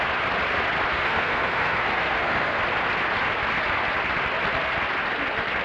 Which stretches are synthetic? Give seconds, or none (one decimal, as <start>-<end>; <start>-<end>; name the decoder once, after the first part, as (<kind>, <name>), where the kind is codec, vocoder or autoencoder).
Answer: 0.9-2.6 (codec, SNAC)